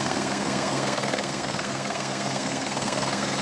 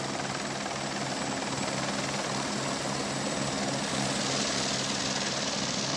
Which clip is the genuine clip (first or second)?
second